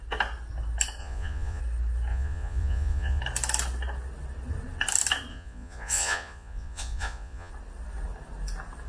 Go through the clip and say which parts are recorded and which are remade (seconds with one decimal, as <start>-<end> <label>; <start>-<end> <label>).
0.0-1.0 recorded; 1.0-1.6 remade; 1.6-2.1 recorded; 2.1-3.2 remade; 3.2-5.3 recorded; 5.3-7.5 remade; 7.5-8.9 recorded